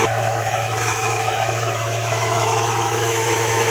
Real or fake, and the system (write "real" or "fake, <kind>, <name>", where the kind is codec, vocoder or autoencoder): fake, autoencoder, DAC-VAE